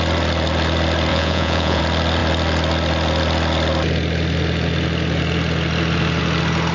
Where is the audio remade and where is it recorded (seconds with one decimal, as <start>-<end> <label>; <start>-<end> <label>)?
0.0-1.1 recorded; 1.1-1.8 remade; 1.8-6.7 recorded

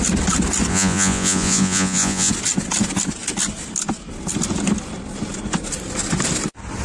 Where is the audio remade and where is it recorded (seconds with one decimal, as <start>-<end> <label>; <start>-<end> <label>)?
0.0-0.7 recorded; 0.7-2.3 remade; 2.3-6.8 recorded